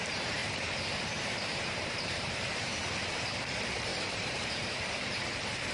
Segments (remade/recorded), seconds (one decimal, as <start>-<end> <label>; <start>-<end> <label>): 0.0-0.4 remade; 0.4-1.0 recorded; 1.0-2.7 remade; 2.7-3.5 recorded; 3.5-5.7 remade

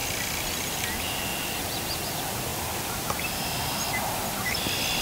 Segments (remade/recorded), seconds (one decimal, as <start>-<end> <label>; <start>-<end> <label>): 0.0-1.3 recorded; 1.3-2.0 remade; 2.0-2.5 recorded; 2.5-3.3 remade; 3.3-5.0 recorded